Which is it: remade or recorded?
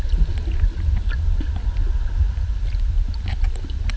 recorded